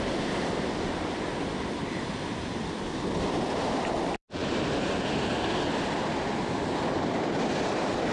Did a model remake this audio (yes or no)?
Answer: yes